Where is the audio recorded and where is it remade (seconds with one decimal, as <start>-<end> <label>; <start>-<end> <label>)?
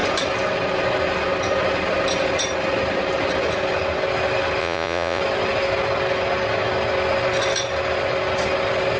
0.0-4.6 recorded; 4.6-5.2 remade; 5.2-9.0 recorded